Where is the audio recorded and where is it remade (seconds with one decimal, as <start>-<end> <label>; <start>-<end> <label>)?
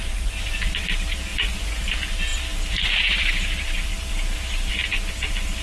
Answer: 0.0-0.7 remade; 0.7-1.3 recorded; 1.3-1.8 remade; 1.8-5.6 recorded